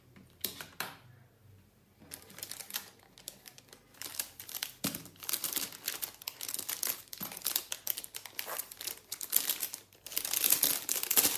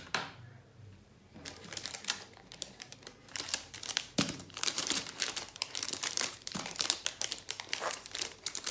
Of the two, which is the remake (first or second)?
second